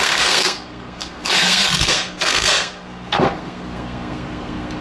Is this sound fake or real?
fake